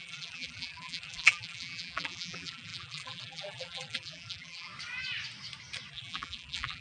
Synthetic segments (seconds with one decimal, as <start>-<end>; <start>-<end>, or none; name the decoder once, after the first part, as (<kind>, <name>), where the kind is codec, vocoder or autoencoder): 0.0-4.7 (vocoder, BigVGAN v2); 5.9-6.8